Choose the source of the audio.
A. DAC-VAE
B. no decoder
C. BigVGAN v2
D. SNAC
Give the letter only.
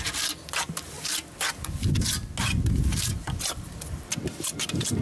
B